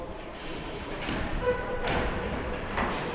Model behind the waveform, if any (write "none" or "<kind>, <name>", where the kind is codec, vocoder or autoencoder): vocoder, BigVGAN v2